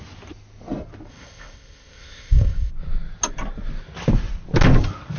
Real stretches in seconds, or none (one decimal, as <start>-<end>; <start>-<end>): 0.0-1.1; 2.7-5.2